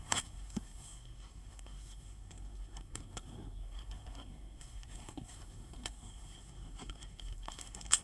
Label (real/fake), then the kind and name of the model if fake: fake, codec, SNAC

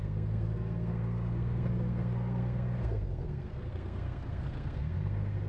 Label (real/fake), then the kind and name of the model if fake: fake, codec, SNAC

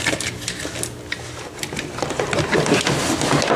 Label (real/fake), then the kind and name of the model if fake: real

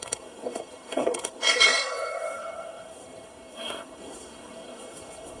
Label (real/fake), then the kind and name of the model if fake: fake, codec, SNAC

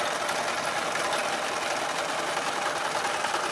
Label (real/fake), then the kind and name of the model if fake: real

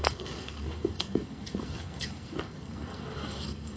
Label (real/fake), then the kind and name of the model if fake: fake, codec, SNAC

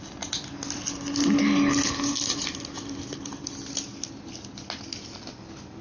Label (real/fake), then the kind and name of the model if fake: real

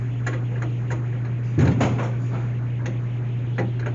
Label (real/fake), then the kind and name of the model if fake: real